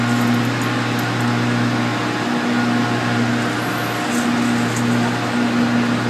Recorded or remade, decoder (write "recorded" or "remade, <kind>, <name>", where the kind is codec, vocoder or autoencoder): recorded